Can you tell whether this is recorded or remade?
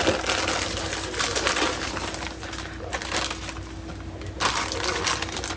recorded